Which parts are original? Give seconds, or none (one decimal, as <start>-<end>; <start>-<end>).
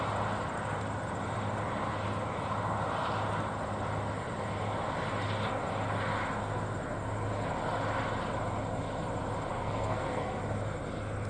0.0-9.5; 10.4-11.3